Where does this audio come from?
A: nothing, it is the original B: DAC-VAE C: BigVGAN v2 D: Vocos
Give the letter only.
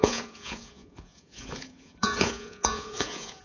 D